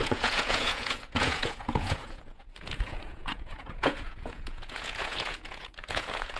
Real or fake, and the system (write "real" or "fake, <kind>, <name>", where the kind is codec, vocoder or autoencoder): fake, vocoder, Vocos